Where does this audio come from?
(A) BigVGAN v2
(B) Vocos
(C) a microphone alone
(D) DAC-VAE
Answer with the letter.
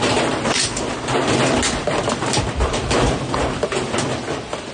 C